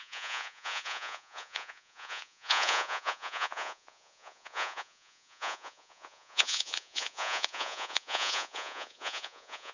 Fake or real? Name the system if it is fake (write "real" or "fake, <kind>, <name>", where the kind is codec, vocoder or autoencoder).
fake, vocoder, Vocos